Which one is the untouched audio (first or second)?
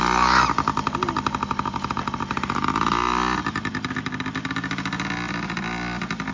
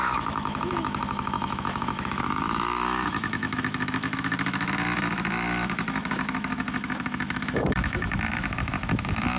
first